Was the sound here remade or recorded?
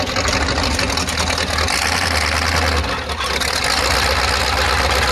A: recorded